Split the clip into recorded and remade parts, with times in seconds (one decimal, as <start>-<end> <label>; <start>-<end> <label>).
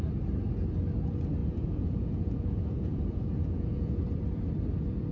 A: 0.0-1.4 recorded; 1.4-4.0 remade; 4.0-5.1 recorded